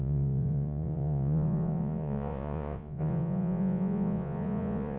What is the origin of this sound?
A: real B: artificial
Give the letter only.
B